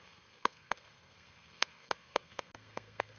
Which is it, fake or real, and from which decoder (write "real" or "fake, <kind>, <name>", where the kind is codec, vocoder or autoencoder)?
fake, codec, SNAC